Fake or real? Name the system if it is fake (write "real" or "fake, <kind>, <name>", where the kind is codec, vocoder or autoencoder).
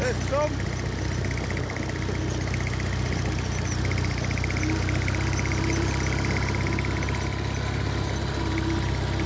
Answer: real